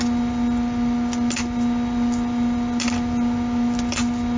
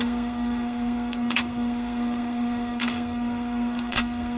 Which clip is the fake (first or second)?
second